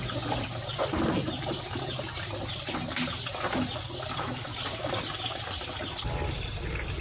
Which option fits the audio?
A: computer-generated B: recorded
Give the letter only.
B